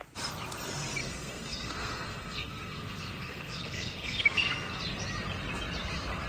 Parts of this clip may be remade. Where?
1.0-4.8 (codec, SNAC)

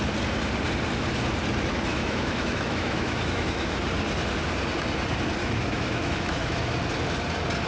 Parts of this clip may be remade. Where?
1.9-3.8 (autoencoder, DAC-VAE); 5.4-6.7